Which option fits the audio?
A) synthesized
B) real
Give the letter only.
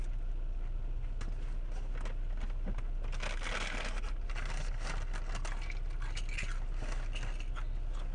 B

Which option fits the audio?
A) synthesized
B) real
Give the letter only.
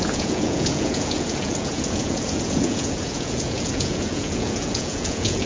A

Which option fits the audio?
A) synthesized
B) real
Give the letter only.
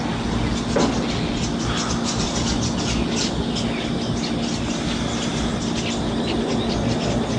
B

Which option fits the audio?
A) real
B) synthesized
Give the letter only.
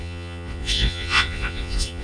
B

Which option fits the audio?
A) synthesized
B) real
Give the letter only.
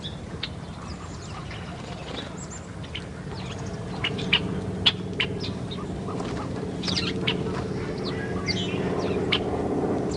B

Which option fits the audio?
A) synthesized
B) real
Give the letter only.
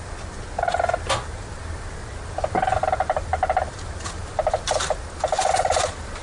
B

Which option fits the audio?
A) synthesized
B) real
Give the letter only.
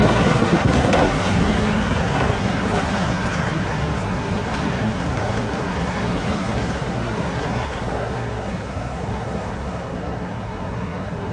A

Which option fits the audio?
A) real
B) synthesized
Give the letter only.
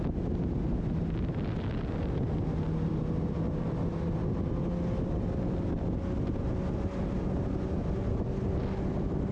A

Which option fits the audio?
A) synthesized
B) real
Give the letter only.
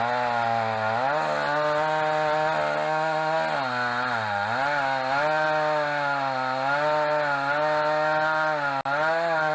B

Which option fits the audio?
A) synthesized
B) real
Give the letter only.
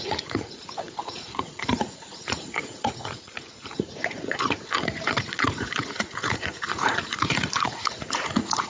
A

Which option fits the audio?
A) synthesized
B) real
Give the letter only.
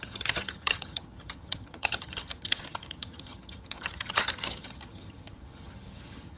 A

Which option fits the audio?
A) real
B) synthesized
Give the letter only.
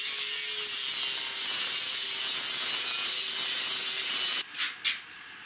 A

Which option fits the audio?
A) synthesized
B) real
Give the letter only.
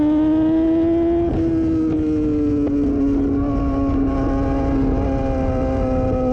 B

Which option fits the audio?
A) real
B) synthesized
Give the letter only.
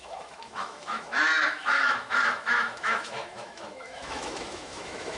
B